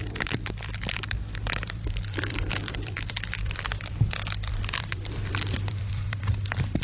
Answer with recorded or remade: remade